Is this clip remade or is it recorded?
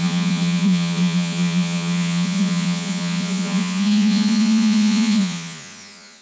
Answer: remade